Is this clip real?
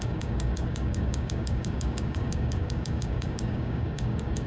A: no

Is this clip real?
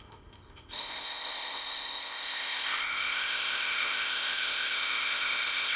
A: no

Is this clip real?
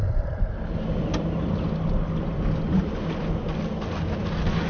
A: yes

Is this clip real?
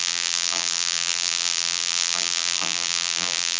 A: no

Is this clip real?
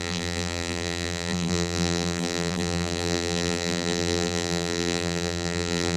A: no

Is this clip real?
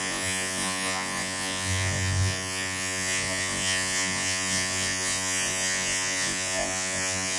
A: no